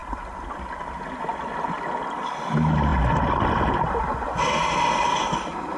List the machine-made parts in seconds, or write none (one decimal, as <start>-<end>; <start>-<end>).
none